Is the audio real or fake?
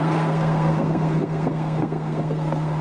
fake